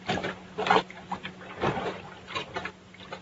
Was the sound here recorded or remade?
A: recorded